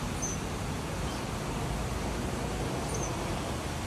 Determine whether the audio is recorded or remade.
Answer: recorded